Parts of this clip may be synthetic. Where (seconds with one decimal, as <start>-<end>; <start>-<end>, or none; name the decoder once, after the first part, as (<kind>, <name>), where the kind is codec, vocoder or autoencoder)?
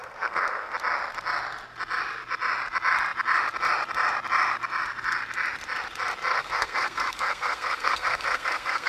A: 0.0-0.7 (codec, SNAC); 6.3-8.9